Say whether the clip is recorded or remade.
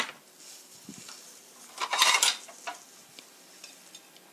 recorded